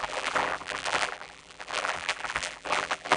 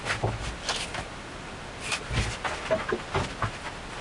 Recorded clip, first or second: second